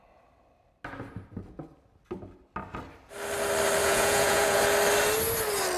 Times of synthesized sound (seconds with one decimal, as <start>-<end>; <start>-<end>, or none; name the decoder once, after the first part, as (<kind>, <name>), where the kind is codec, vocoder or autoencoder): 3.8-4.6 (vocoder, Vocos)